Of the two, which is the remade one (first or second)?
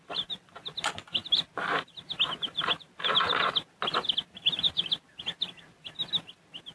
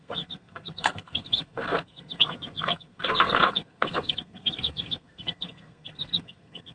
second